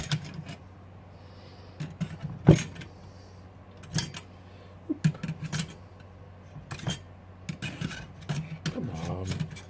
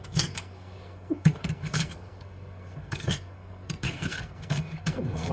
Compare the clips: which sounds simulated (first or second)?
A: second